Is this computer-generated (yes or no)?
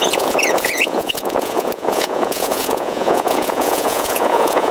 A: yes